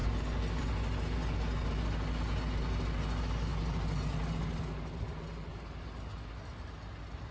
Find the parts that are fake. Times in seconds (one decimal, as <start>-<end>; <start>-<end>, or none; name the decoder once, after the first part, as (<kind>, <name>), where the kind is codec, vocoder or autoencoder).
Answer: none

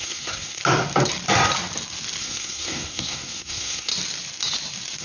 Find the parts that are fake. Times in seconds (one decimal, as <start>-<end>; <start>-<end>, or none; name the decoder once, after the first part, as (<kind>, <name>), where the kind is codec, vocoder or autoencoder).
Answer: 0.0-0.6 (codec, SNAC); 2.2-3.9

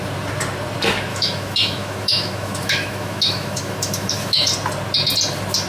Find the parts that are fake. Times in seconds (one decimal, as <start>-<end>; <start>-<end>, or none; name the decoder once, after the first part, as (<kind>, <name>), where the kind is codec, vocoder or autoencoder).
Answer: 1.1-4.5 (autoencoder, DAC-VAE)

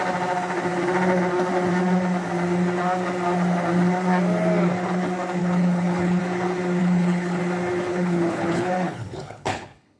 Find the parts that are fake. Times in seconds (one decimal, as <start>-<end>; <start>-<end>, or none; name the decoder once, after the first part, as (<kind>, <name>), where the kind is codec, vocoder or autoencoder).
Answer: 5.4-6.2 (codec, HILCodec); 6.8-7.4; 7.9-10.0

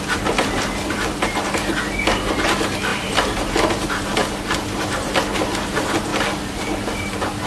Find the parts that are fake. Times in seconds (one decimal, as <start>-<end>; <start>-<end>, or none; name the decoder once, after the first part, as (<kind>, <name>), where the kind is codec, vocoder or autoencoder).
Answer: 2.9-3.5 (vocoder, BigVGAN v2); 4.2-5.2; 6.1-7.5

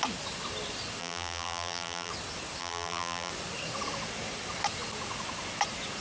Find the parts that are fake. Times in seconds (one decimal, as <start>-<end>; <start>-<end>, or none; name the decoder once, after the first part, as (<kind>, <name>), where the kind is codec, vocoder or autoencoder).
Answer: 1.0-2.1 (vocoder, BigVGAN v2); 2.6-3.3

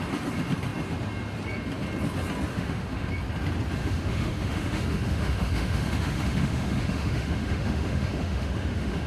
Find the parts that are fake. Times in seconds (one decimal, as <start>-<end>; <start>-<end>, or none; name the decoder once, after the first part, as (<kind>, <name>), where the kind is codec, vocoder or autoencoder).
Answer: 2.5-3.1 (autoencoder, DAC-VAE); 3.8-9.1

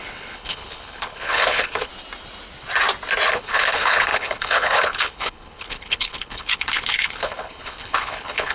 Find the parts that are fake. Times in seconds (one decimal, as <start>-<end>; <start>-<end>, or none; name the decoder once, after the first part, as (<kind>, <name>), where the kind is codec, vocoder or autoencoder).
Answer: 0.0-1.9 (codec, HILCodec); 3.3-8.5